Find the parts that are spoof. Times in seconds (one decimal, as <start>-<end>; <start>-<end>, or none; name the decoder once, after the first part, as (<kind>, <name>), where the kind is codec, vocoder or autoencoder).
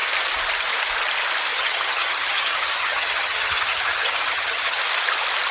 1.5-4.8 (vocoder, HiFi-GAN)